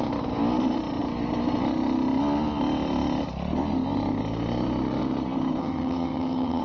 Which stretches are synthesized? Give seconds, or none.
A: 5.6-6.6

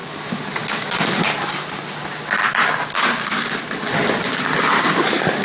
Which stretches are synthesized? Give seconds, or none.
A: none